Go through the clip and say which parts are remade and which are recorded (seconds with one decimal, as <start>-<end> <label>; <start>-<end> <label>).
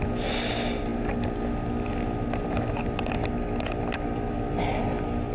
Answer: 0.0-5.3 recorded